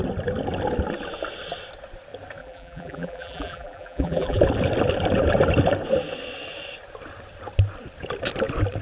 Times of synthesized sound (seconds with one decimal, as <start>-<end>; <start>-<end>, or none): 2.4-4.4